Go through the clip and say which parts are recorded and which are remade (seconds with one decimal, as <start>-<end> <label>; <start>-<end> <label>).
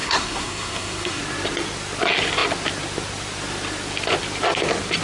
0.0-1.2 remade; 1.2-5.0 recorded